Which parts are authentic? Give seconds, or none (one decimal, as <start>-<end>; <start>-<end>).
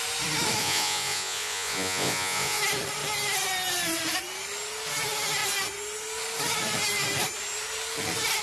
0.0-0.6; 2.6-8.4